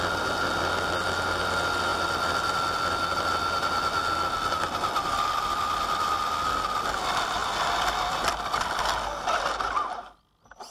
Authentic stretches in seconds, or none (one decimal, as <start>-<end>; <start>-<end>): 0.0-10.7